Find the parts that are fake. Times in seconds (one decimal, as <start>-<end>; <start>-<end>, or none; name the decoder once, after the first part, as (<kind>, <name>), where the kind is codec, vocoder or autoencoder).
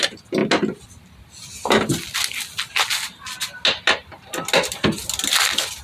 none